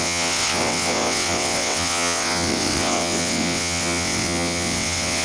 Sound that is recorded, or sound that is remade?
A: remade